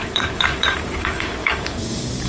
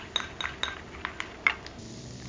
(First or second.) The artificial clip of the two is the first